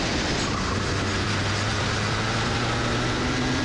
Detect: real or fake real